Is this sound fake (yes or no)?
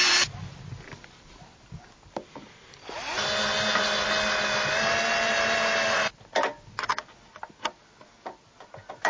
no